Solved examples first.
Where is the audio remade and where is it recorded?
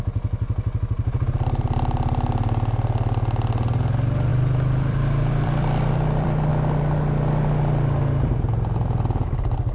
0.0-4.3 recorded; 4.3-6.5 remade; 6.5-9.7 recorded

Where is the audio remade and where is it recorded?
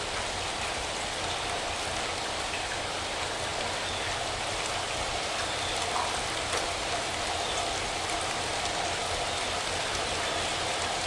0.0-3.5 recorded; 3.5-7.4 remade; 7.4-11.1 recorded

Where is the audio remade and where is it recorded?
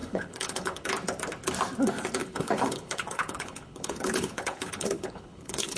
0.0-0.9 remade; 0.9-2.2 recorded; 2.2-5.8 remade